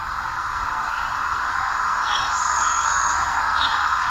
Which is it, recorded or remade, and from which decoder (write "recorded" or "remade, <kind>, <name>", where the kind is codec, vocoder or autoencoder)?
remade, codec, SNAC